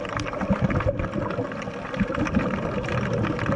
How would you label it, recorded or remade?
recorded